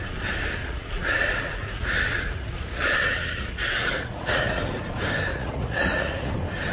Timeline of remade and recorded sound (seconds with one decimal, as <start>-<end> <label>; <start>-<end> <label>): 0.0-0.6 recorded; 0.6-4.6 remade; 4.6-5.3 recorded; 5.3-6.3 remade; 6.3-6.7 recorded